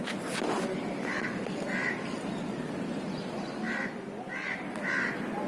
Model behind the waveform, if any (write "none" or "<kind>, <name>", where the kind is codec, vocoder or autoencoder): none